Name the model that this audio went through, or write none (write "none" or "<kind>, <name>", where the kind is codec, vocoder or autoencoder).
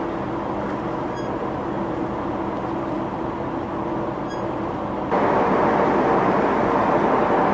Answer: none